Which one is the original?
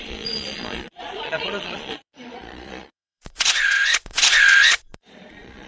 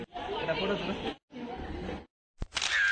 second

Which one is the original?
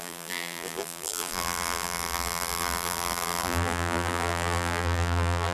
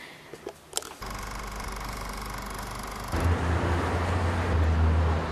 second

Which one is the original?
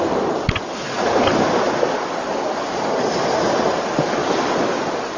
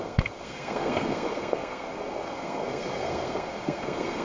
first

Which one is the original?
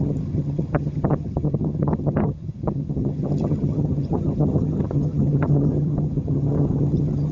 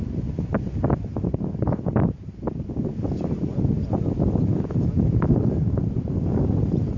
second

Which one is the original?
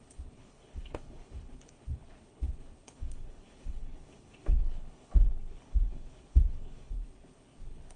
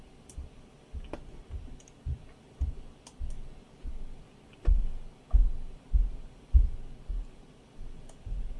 second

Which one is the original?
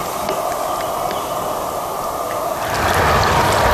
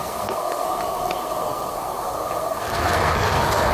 first